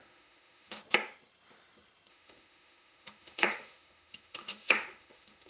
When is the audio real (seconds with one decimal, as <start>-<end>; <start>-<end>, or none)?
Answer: 0.8-2.1